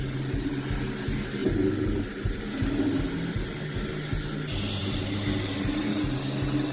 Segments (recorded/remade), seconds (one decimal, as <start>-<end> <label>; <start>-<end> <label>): 0.0-1.4 recorded; 1.4-2.8 remade; 2.8-4.8 recorded; 4.8-6.2 remade; 6.2-6.7 recorded